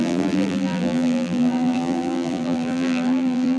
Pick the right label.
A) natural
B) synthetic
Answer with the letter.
B